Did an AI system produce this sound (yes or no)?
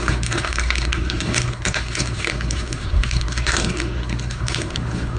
yes